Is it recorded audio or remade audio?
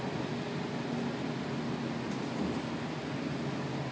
recorded